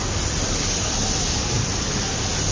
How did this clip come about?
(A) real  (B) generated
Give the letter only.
A